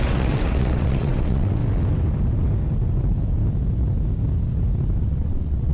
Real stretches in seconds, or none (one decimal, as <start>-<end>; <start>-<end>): 1.6-5.0